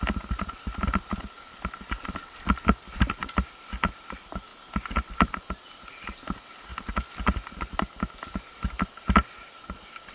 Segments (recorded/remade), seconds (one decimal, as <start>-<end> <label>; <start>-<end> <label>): 0.0-10.1 recorded